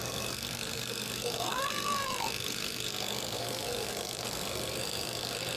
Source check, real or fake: fake